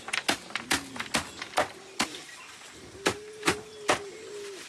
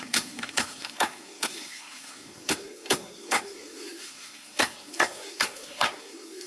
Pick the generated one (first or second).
second